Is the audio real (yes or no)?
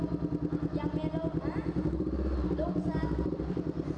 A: yes